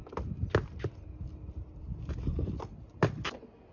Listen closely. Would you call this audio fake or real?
real